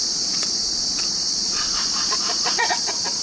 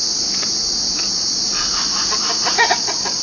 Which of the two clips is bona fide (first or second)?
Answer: second